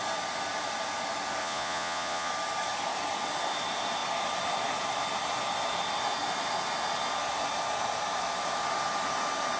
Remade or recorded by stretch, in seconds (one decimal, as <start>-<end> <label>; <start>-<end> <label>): 0.0-1.4 recorded; 1.4-2.3 remade; 2.3-9.6 recorded